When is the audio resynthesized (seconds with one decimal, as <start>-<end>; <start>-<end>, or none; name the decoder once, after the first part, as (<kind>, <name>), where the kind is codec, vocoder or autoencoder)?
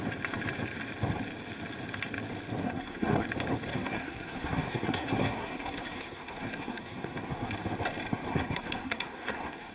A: 2.6-3.3 (codec, SNAC); 3.7-7.5; 8.3-9.7